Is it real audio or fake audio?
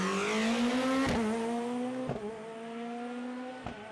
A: real